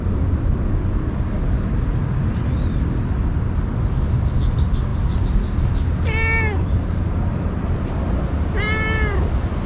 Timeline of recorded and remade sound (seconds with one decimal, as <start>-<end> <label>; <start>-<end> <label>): 0.0-9.7 recorded